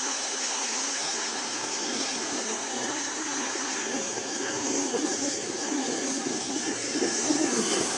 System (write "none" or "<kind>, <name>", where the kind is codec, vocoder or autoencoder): codec, SNAC